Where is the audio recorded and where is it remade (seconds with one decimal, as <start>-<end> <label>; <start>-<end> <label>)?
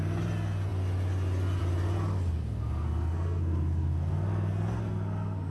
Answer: 0.0-2.4 recorded; 2.4-5.5 remade